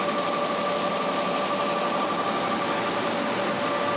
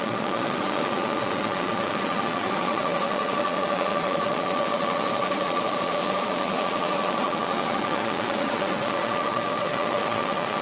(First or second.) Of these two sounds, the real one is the first